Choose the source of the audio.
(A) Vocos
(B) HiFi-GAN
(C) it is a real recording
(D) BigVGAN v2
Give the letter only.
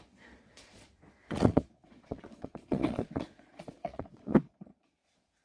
A